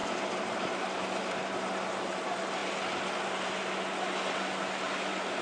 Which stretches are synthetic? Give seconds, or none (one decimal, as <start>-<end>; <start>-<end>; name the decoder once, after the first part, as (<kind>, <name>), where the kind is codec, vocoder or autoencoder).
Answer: 0.0-0.7 (vocoder, BigVGAN v2)